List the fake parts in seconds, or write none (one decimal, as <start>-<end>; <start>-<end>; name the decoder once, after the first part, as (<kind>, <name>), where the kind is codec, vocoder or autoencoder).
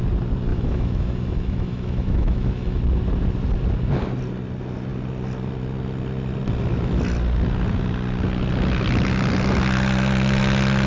0.5-2.8 (autoencoder, DAC-VAE)